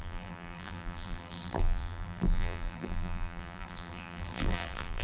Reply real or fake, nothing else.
fake